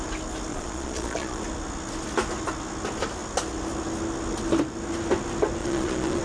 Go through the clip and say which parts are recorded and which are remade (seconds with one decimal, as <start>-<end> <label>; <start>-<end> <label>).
0.0-0.5 recorded; 0.5-1.4 remade; 1.4-5.6 recorded; 5.6-6.2 remade